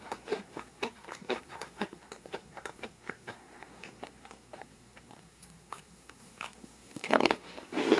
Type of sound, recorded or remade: remade